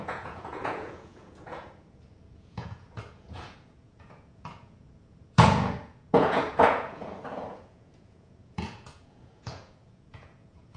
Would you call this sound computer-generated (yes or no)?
yes